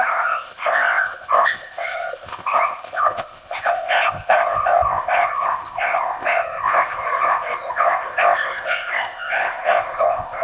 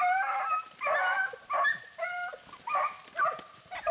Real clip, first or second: second